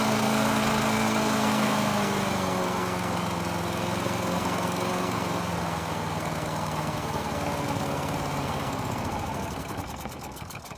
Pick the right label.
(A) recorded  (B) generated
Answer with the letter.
B